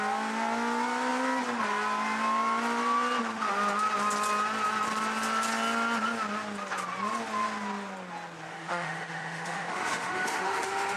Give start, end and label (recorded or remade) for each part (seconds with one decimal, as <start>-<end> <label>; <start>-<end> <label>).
0.0-8.5 recorded; 8.5-11.0 remade